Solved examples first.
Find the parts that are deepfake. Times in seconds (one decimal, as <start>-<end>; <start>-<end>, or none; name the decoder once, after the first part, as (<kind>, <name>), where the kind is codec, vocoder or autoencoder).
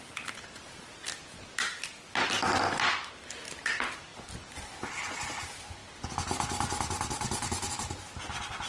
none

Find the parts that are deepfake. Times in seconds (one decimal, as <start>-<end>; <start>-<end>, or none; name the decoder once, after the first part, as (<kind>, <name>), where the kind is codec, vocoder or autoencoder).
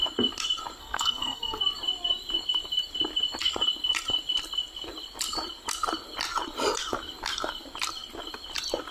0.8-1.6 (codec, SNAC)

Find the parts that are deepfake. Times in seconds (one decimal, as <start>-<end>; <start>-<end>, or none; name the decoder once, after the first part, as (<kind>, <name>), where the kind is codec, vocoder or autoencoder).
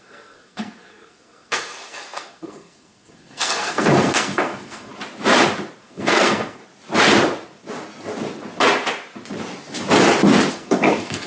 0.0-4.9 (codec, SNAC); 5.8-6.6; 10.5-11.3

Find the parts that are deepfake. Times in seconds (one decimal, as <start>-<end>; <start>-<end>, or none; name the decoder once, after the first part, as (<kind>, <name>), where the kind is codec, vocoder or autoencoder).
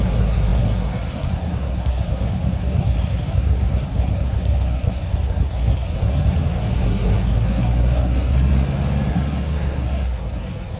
0.0-8.5 (codec, SNAC); 9.1-10.8